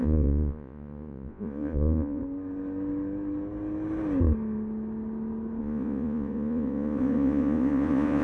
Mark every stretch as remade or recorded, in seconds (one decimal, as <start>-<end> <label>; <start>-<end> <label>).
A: 0.0-2.2 remade; 2.2-5.6 recorded; 5.6-8.2 remade